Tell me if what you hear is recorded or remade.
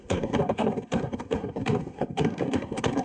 remade